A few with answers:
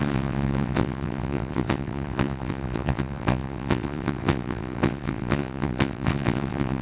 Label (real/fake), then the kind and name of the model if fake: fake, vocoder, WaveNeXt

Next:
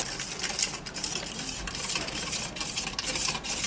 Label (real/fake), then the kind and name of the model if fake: real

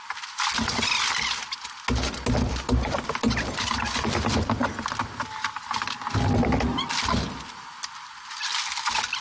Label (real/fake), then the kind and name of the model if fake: real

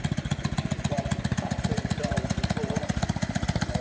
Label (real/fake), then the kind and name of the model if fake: real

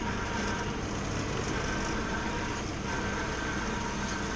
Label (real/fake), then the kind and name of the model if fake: real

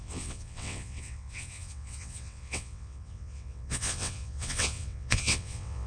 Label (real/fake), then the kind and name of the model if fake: fake, vocoder, WaveNeXt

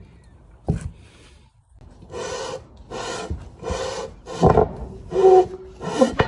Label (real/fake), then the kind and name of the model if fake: real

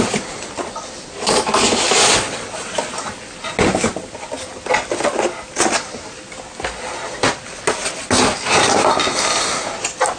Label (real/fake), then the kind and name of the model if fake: real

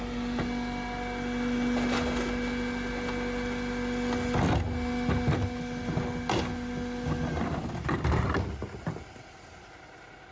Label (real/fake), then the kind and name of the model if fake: real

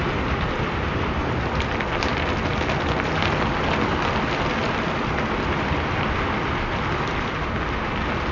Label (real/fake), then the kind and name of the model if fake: real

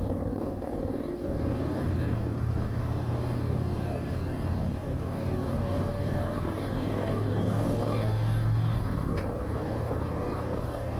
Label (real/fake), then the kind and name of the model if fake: fake, codec, DAC